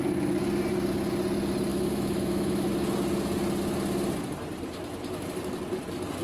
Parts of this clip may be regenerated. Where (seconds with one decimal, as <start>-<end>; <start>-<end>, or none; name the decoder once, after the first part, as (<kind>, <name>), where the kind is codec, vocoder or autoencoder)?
1.7-2.7 (autoencoder, DAC-VAE)